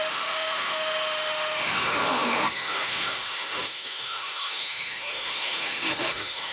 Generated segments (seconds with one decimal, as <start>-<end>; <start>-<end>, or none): 0.0-6.5